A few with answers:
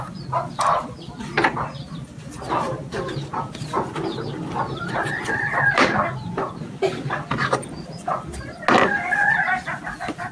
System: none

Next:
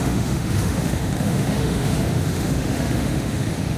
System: autoencoder, DAC-VAE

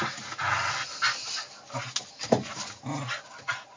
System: none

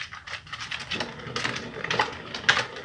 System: none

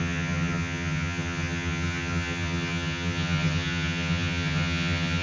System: vocoder, HiFi-GAN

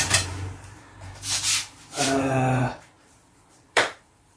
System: vocoder, BigVGAN v2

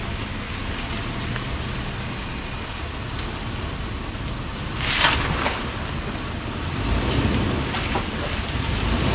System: none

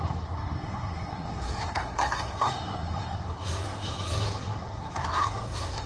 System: codec, SNAC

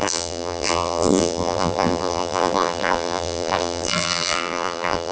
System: vocoder, BigVGAN v2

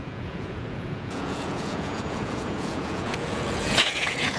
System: vocoder, Vocos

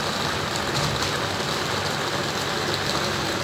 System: none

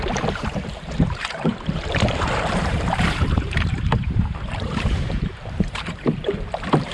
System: vocoder, BigVGAN v2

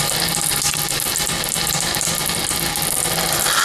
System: none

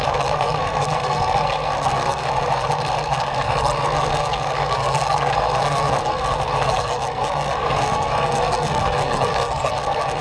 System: codec, SNAC